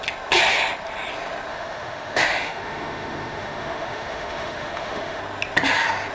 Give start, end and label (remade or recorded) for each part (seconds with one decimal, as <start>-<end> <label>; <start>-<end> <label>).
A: 0.0-1.5 recorded; 1.5-5.2 remade; 5.2-6.1 recorded